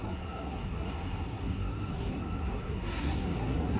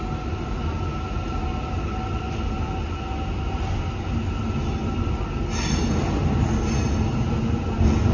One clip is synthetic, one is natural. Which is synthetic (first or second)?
first